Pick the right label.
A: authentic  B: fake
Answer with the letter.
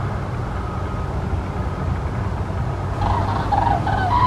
A